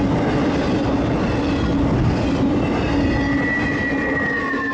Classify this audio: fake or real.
real